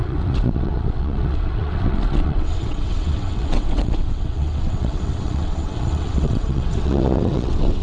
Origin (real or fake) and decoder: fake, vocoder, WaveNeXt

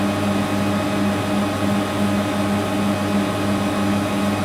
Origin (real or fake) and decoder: real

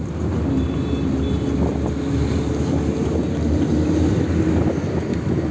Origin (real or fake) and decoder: real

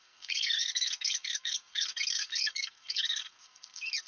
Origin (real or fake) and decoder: fake, codec, SNAC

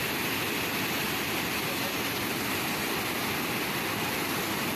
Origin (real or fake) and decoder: real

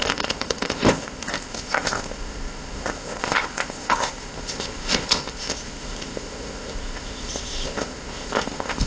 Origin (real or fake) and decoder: fake, codec, ZipCodec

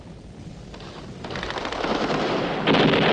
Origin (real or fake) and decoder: real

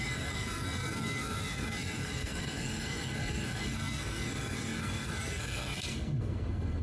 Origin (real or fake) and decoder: fake, codec, SNAC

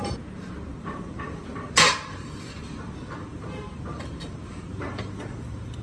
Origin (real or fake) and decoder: fake, vocoder, BigVGAN v2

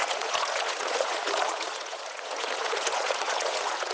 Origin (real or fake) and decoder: fake, vocoder, Vocos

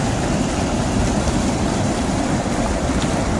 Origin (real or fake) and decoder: real